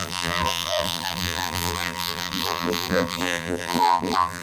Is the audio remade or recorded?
remade